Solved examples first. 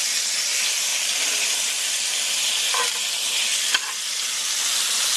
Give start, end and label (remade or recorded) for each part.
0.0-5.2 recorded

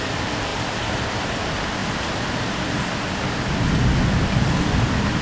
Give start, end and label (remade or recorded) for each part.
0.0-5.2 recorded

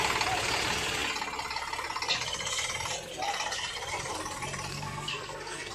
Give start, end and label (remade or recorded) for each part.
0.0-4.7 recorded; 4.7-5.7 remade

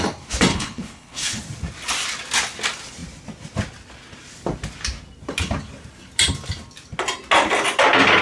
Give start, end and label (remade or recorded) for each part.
0.0-0.5 recorded; 0.5-1.4 remade; 1.4-8.2 recorded